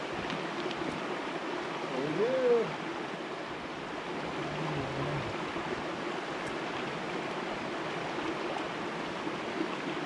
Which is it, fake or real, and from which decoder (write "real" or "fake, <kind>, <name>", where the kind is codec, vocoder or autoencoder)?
real